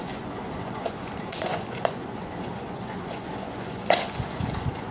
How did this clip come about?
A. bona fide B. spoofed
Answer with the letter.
B